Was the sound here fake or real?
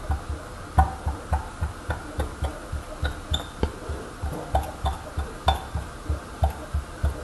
real